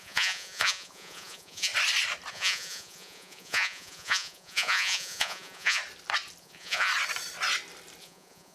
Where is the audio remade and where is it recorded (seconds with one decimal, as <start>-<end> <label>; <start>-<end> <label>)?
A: 0.0-1.7 remade; 1.7-2.3 recorded; 2.3-5.8 remade; 5.8-6.4 recorded; 6.4-6.9 remade; 6.9-8.0 recorded; 8.0-8.5 remade